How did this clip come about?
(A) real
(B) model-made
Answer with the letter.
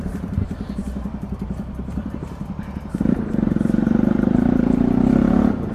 B